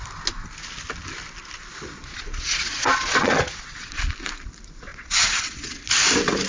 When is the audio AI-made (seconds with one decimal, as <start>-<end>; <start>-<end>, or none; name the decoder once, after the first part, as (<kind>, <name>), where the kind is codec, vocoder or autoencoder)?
1.7-4.0 (vocoder, Vocos); 4.9-5.8